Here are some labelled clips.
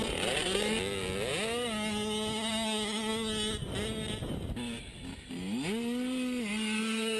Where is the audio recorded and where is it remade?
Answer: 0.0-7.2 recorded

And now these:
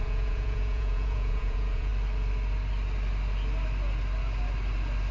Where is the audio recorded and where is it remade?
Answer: 0.0-1.9 remade; 1.9-5.1 recorded